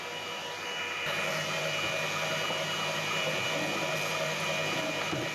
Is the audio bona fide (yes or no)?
yes